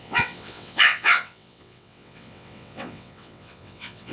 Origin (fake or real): fake